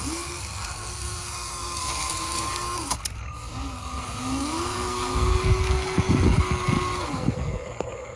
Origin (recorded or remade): remade